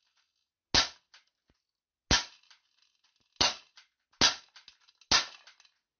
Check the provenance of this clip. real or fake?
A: real